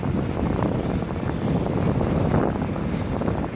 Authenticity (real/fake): real